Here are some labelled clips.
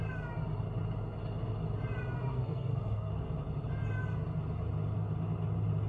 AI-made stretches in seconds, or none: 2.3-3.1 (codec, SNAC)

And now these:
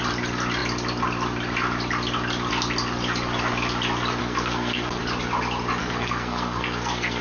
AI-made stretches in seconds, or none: 4.2-5.0 (codec, SNAC); 5.8-7.2

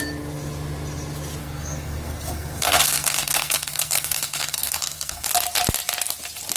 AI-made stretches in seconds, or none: 1.4-5.3 (codec, SNAC)